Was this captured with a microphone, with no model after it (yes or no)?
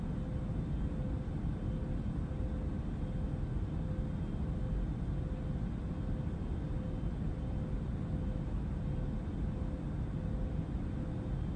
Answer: yes